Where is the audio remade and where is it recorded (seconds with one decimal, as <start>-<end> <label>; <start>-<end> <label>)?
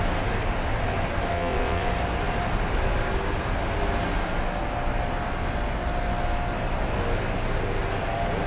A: 0.0-1.3 recorded; 1.3-1.9 remade; 1.9-8.5 recorded